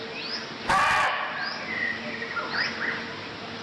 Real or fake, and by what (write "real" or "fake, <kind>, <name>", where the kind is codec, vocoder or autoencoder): real